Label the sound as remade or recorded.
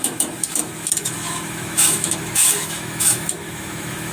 remade